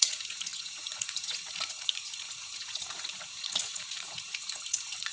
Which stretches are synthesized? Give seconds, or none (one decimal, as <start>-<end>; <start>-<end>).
0.0-5.1